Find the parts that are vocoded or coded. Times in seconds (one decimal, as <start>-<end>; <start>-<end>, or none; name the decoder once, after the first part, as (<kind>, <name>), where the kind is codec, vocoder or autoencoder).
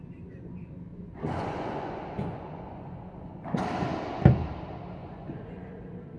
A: 0.9-3.6 (vocoder, Vocos); 5.0-5.8